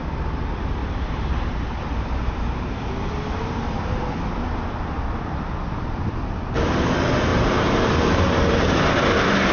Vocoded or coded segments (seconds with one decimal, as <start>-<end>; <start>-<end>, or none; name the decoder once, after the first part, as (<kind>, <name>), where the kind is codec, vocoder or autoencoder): 0.8-4.1 (vocoder, BigVGAN v2); 7.3-9.5